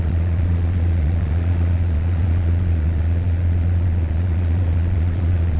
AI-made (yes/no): yes